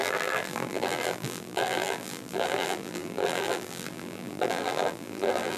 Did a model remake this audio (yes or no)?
yes